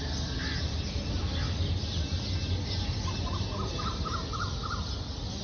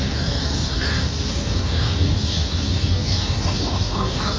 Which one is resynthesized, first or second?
second